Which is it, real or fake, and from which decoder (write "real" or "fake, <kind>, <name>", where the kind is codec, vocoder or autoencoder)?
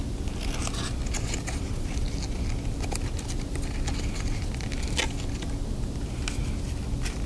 real